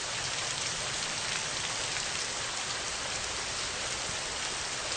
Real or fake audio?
real